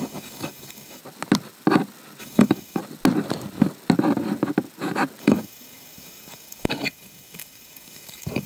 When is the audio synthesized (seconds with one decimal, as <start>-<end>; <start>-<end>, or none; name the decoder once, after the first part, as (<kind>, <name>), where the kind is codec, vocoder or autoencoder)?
0.0-1.0 (codec, DAC); 2.2-2.8; 5.2-8.5